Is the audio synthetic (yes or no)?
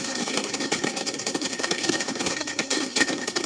yes